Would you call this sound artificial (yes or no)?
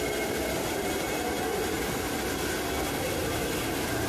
no